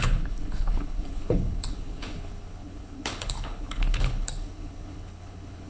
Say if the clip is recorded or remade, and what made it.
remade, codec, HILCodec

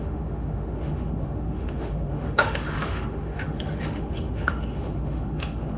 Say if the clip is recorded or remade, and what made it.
remade, autoencoder, DAC-VAE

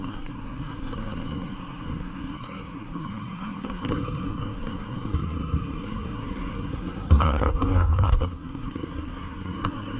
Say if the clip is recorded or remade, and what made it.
remade, codec, SNAC